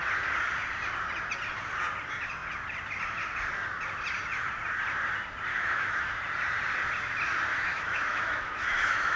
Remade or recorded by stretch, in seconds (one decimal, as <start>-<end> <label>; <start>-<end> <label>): 0.0-5.5 recorded; 5.5-6.2 remade; 6.2-7.5 recorded; 7.5-9.2 remade